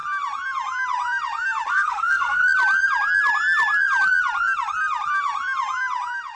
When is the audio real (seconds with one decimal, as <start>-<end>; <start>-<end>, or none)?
0.0-1.7; 2.4-6.4